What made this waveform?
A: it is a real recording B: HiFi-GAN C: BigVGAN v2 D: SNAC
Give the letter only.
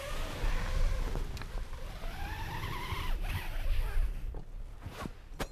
A